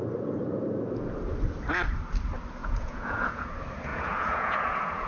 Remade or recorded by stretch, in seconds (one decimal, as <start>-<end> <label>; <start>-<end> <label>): 0.0-2.6 recorded; 2.6-3.5 remade; 3.5-3.9 recorded; 3.9-5.1 remade